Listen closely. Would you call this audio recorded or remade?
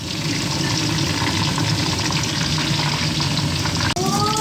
recorded